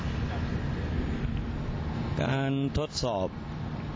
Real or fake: real